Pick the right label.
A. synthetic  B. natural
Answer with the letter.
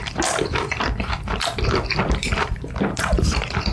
A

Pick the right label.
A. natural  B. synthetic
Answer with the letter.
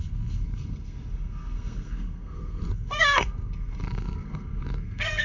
B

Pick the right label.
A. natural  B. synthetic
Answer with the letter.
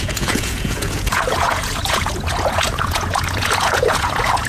B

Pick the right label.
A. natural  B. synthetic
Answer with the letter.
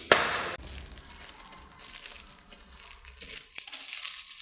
A